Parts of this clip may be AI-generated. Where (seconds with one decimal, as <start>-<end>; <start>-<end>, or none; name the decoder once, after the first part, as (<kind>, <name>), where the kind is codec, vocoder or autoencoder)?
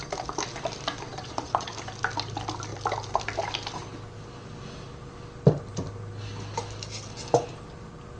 1.1-1.7 (vocoder, Vocos)